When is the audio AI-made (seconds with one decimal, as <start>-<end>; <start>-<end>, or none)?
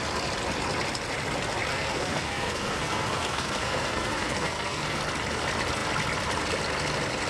1.7-5.0